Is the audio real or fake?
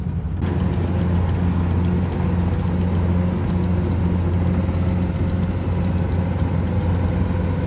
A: real